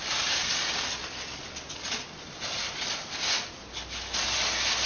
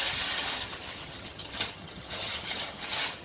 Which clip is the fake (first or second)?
second